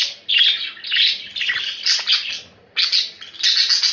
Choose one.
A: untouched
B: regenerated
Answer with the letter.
A